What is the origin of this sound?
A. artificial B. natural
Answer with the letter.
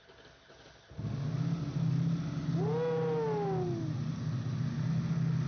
B